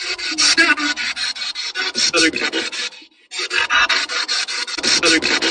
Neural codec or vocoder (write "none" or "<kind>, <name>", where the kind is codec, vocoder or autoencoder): none